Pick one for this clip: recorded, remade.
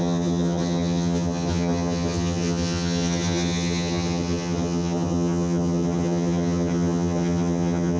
remade